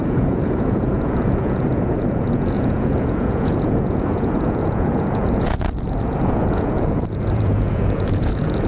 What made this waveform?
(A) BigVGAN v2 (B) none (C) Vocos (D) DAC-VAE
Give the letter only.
C